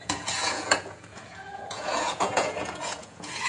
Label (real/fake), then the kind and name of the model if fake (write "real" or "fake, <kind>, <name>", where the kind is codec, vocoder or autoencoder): fake, vocoder, Vocos